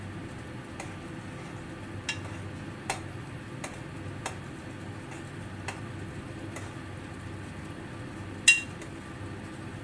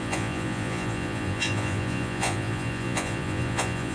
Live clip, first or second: first